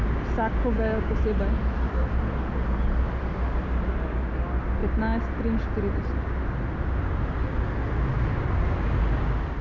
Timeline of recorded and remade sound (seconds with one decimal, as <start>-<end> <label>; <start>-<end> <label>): 0.0-0.6 recorded; 0.6-1.2 remade; 1.2-9.6 recorded